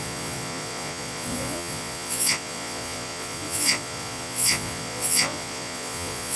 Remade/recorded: remade